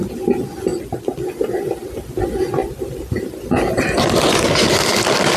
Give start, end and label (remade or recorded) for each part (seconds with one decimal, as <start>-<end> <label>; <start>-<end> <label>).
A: 0.0-5.4 recorded